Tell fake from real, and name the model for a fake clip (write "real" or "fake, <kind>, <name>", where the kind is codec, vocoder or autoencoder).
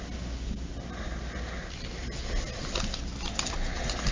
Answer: real